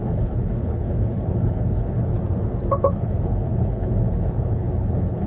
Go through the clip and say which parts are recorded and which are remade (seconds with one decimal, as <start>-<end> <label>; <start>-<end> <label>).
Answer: 0.0-2.1 remade; 2.1-2.7 recorded; 2.7-5.3 remade